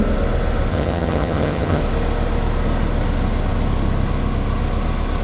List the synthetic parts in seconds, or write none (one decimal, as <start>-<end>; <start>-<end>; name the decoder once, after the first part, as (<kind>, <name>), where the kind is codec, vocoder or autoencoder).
0.7-1.8 (vocoder, HiFi-GAN)